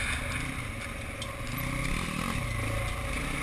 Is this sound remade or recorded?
recorded